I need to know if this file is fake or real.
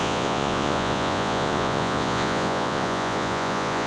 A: fake